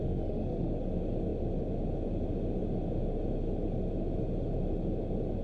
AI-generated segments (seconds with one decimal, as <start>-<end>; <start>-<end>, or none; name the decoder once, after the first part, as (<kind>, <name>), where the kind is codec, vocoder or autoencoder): 0.0-0.7 (autoencoder, DAC-VAE)

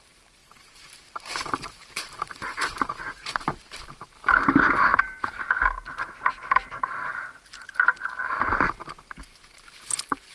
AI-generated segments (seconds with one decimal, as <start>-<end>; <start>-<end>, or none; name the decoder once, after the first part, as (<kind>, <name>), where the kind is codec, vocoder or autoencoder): 0.4-3.6 (vocoder, BigVGAN v2); 4.9-5.5

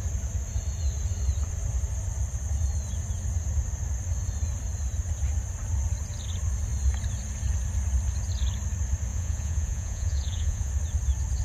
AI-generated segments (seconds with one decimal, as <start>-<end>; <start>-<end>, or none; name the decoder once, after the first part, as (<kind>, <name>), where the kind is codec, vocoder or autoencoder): 9.1-10.7 (vocoder, Vocos)